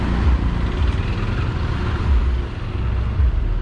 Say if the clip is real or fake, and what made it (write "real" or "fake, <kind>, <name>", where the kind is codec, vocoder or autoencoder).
real